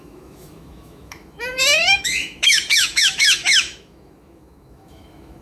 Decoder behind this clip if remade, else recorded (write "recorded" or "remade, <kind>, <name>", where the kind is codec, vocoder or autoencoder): remade, autoencoder, DAC-VAE